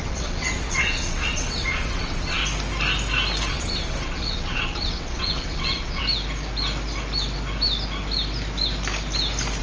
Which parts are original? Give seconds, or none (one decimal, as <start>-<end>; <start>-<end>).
2.4-3.5; 6.0-9.6